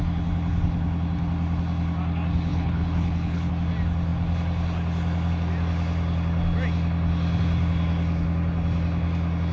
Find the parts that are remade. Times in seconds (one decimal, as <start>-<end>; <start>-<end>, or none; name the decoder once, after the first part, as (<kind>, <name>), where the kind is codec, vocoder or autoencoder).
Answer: 2.5-3.5 (codec, HILCodec)